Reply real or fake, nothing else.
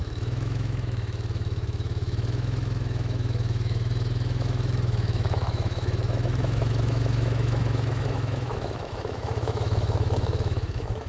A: fake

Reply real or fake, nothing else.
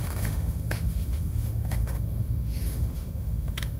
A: fake